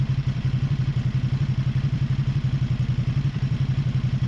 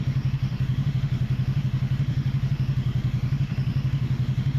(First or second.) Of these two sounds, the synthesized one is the second